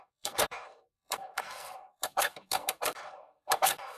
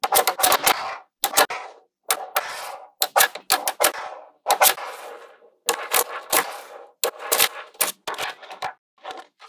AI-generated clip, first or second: first